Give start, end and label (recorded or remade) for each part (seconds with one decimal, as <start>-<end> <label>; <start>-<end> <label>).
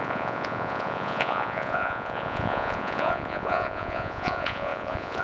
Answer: 0.0-5.2 remade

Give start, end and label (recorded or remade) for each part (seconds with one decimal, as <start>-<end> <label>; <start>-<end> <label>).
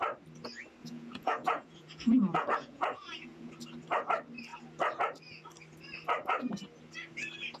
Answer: 0.0-0.8 recorded; 0.8-3.5 remade; 3.5-7.6 recorded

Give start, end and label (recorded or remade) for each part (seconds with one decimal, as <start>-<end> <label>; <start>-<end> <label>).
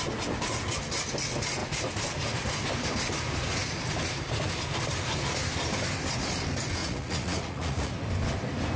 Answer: 0.0-6.8 recorded; 6.8-7.9 remade; 7.9-8.8 recorded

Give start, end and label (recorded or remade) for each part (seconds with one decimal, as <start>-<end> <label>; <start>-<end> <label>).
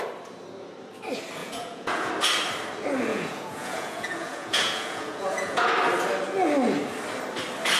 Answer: 0.0-1.4 recorded; 1.4-2.1 remade; 2.1-3.1 recorded; 3.1-5.7 remade; 5.7-7.8 recorded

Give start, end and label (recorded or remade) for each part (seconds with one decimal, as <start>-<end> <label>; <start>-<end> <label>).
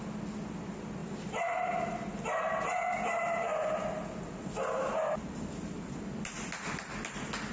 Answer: 0.0-7.5 recorded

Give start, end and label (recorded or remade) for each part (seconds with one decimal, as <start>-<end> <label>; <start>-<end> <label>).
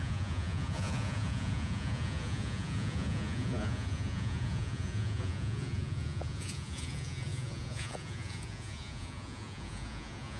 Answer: 0.0-10.4 remade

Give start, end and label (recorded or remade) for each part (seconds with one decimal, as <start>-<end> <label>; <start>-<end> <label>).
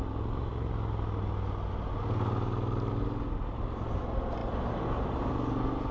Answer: 0.0-5.9 recorded